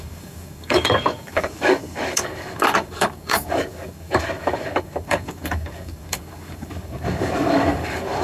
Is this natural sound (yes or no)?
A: no